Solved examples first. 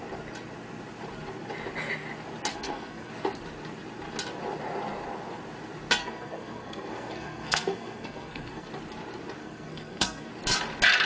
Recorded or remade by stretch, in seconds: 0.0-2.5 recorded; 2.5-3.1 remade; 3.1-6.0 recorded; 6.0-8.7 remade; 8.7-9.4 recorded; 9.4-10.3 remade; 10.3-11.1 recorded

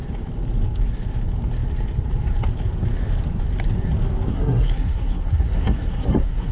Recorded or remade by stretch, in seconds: 0.0-4.3 recorded; 4.3-6.5 remade

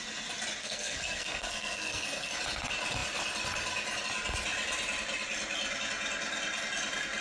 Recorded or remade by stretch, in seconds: 0.0-0.6 recorded; 0.6-2.3 remade; 2.3-7.2 recorded

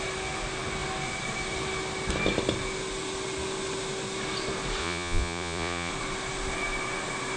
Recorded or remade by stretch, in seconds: 0.0-4.8 recorded; 4.8-5.9 remade; 5.9-7.4 recorded

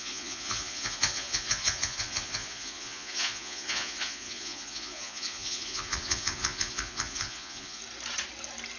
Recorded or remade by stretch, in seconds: 0.0-7.8 remade; 7.8-8.8 recorded

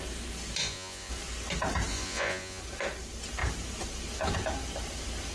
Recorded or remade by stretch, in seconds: 0.0-0.6 recorded; 0.6-1.1 remade; 1.1-1.9 recorded; 1.9-2.6 remade; 2.6-5.3 recorded

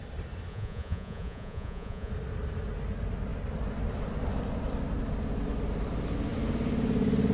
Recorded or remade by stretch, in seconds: 0.0-0.5 recorded; 0.5-2.1 remade; 2.1-7.3 recorded

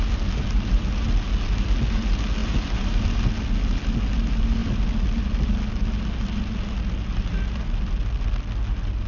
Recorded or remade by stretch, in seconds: 0.0-9.1 recorded